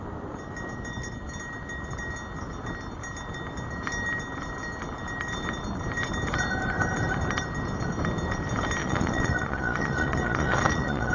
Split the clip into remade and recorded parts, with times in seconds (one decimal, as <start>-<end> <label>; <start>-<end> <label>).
0.0-8.8 recorded; 8.8-11.1 remade